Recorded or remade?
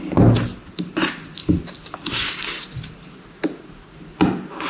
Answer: recorded